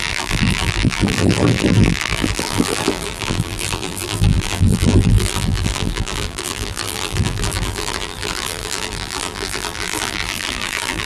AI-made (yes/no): yes